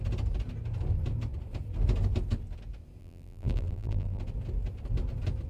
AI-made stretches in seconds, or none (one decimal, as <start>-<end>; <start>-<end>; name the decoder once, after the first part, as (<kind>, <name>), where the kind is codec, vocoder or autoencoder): 3.0-4.2 (vocoder, BigVGAN v2)